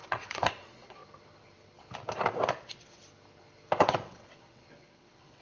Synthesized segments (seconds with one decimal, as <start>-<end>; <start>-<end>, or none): 0.0-1.0; 2.6-3.0; 3.8-5.4